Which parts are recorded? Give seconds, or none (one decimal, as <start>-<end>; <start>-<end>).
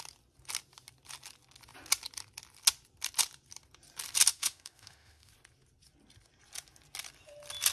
0.0-4.3; 5.3-7.7